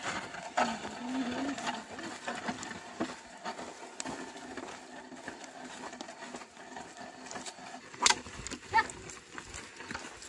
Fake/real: real